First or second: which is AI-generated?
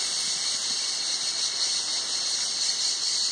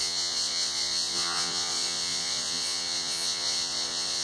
second